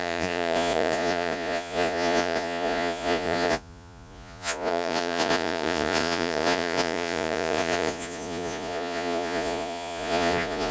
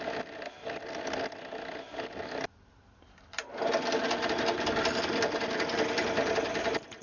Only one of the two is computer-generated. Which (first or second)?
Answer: first